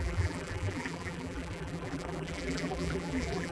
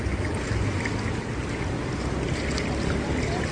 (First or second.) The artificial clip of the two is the first